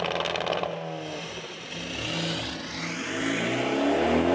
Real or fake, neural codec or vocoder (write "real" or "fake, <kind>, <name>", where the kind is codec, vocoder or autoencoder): real